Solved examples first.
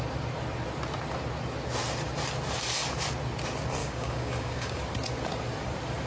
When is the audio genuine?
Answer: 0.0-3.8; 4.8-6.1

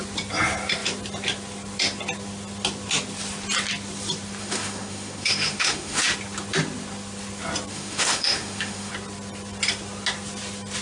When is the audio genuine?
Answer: 0.0-4.4; 6.0-7.7; 8.9-10.8

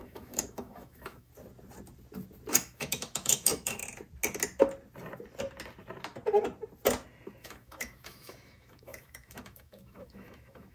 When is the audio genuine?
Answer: 1.3-2.5; 3.8-7.4

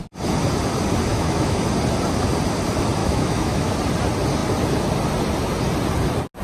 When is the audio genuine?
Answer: 0.0-1.1; 1.6-3.0; 3.7-6.4

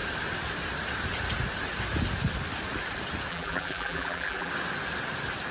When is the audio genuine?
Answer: 0.0-3.3; 4.5-5.5

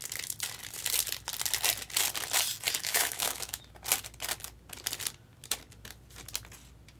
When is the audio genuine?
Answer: 0.0-2.8; 3.6-7.0

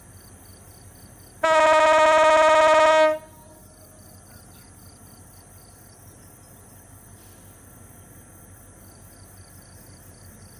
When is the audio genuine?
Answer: 0.0-10.6

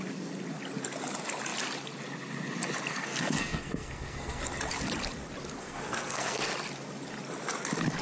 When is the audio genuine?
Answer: 0.0-2.9; 4.4-5.6; 6.5-8.0